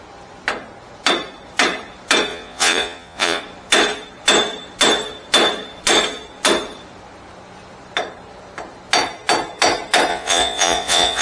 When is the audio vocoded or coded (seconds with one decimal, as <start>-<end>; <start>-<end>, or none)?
2.3-3.4; 10.1-11.2